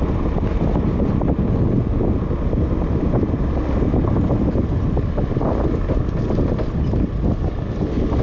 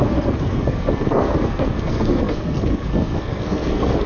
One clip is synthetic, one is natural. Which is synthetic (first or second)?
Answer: second